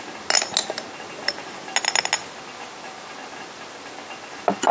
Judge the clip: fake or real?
real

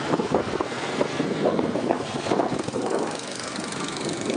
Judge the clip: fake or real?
fake